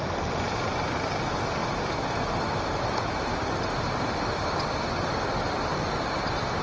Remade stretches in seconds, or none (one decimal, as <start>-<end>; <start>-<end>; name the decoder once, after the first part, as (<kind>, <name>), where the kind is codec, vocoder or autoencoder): none

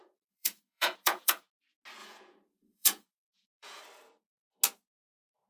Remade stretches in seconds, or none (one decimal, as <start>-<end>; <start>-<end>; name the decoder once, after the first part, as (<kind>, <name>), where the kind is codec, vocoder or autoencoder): 0.0-1.4 (vocoder, Vocos); 2.0-3.8

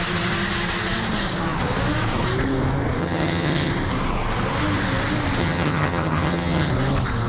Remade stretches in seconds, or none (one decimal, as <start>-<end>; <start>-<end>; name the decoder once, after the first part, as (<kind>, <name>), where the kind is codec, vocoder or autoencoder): 3.0-3.7 (vocoder, HiFi-GAN); 5.4-6.7

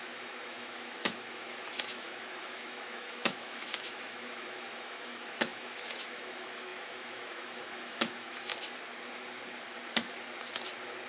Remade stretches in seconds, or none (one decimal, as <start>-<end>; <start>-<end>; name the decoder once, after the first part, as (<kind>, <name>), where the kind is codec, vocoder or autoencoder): 0.0-8.5 (autoencoder, DAC-VAE)

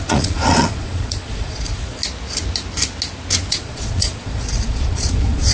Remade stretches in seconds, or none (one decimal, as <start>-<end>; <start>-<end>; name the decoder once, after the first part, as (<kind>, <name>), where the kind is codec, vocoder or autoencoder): 0.0-2.0 (vocoder, Vocos); 3.5-5.5